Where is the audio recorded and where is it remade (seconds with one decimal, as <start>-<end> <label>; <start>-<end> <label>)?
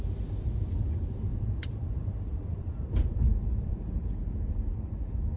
0.0-1.3 recorded; 1.3-4.3 remade; 4.3-5.4 recorded